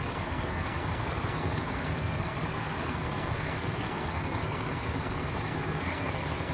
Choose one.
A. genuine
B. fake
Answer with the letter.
B